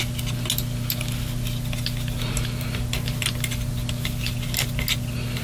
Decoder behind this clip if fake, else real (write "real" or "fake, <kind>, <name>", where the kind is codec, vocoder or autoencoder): real